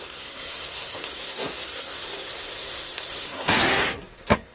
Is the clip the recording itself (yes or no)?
no